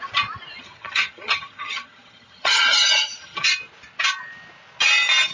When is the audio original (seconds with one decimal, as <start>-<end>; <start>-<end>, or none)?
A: 0.0-0.5; 3.5-5.3